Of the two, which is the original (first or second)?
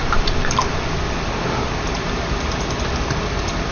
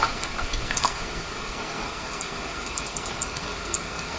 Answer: first